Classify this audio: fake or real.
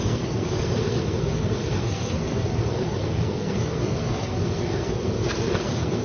fake